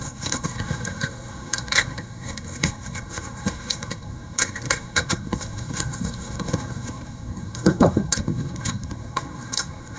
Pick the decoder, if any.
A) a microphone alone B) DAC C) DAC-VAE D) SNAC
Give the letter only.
D